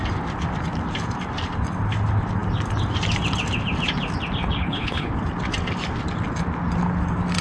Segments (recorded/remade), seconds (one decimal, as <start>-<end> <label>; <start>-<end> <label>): 0.0-4.6 recorded; 4.6-5.1 remade; 5.1-7.4 recorded